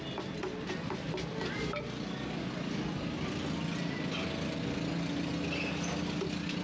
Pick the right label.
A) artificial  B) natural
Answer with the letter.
B